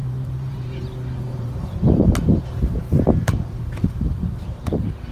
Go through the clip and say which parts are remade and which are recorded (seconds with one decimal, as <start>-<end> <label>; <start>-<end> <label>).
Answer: 0.0-0.8 remade; 0.8-1.3 recorded; 1.3-4.0 remade; 4.0-5.1 recorded